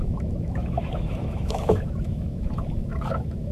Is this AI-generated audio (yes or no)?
yes